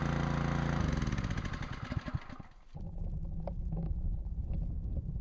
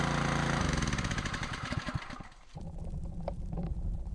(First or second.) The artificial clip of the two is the second